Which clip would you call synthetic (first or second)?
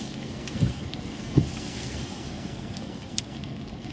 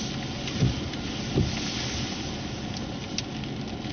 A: first